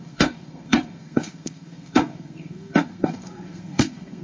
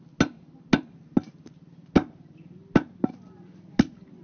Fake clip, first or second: first